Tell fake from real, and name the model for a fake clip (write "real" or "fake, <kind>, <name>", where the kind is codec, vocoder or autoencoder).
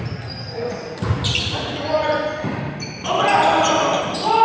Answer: real